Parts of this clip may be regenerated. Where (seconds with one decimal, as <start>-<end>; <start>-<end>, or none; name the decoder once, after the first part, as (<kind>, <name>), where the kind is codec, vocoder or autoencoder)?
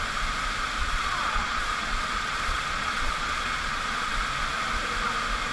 0.8-4.1 (vocoder, Vocos)